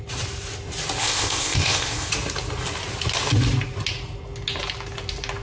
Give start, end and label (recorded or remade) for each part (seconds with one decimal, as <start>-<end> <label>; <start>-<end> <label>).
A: 0.0-1.0 recorded; 1.0-2.1 remade; 2.1-5.4 recorded